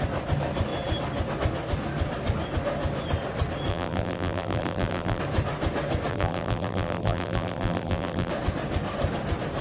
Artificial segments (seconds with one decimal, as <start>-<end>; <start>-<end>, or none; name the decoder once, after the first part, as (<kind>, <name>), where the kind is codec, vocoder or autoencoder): 3.7-5.2 (vocoder, BigVGAN v2); 6.1-8.3